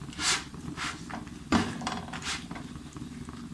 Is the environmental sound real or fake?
real